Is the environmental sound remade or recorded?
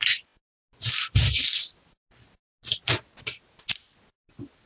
recorded